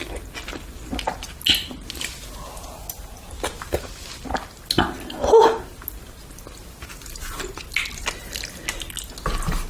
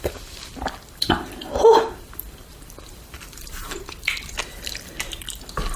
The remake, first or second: second